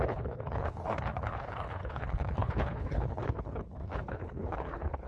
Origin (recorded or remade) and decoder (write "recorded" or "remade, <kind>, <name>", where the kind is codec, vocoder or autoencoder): remade, codec, HILCodec